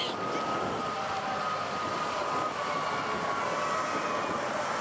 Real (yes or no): yes